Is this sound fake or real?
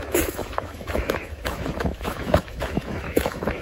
fake